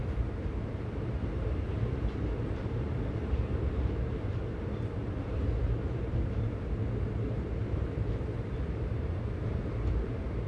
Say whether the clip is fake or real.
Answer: fake